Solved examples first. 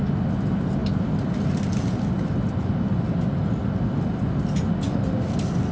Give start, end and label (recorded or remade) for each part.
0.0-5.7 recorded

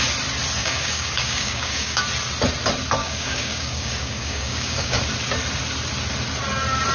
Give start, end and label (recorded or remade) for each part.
0.0-0.6 recorded; 0.6-2.0 remade; 2.0-3.0 recorded; 3.0-5.0 remade; 5.0-6.9 recorded

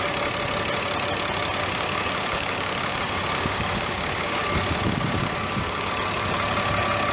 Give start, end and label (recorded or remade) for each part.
0.0-1.6 recorded; 1.6-5.9 remade; 5.9-7.1 recorded

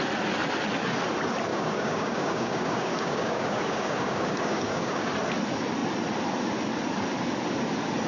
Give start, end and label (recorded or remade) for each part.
0.0-1.5 recorded; 1.5-5.1 remade; 5.1-8.1 recorded

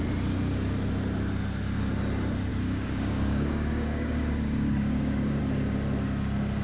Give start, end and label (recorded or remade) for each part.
0.0-2.5 recorded; 2.5-5.4 remade; 5.4-6.6 recorded

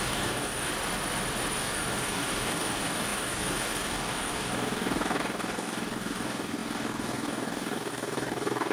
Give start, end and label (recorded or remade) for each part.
0.0-0.7 remade; 0.7-1.6 recorded; 1.6-8.7 remade

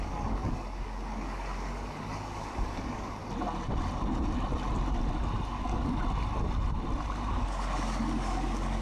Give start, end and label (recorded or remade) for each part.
0.0-3.2 remade; 3.2-5.5 recorded; 5.5-6.0 remade; 6.0-7.3 recorded; 7.3-8.8 remade

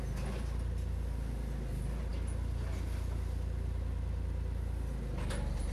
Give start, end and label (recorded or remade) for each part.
0.0-5.7 recorded